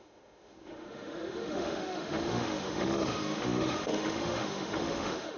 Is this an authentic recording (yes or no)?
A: no